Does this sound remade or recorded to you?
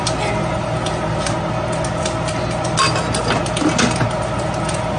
recorded